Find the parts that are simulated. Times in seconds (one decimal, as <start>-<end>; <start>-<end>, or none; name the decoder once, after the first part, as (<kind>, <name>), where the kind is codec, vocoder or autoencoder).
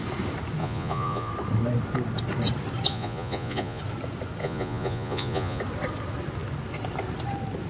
0.6-1.3 (vocoder, Vocos); 2.9-3.8; 4.4-5.6